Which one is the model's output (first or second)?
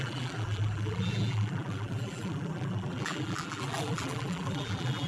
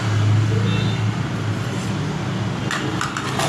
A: first